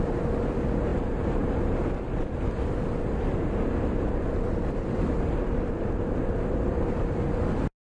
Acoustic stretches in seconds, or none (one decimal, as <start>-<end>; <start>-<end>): 0.0-7.9